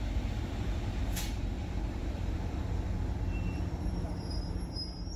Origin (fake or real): fake